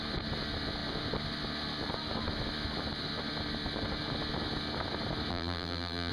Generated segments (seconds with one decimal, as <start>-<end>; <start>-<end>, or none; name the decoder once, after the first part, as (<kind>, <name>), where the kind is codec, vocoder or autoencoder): 5.3-6.1 (vocoder, BigVGAN v2)